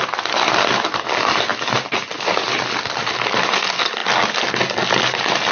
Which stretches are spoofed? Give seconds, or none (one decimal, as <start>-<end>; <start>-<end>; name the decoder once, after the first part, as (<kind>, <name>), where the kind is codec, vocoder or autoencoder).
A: none